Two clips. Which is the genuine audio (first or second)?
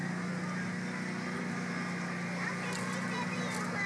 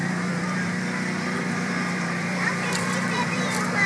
first